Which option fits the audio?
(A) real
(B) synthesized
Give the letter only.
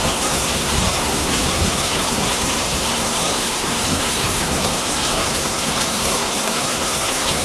B